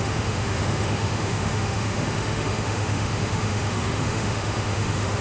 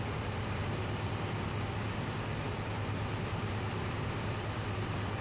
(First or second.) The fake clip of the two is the first